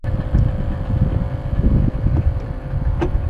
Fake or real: real